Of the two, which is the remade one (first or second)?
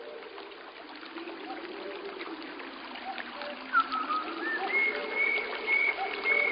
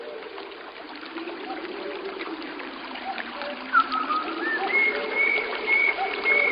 second